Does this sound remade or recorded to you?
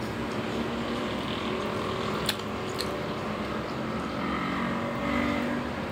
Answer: recorded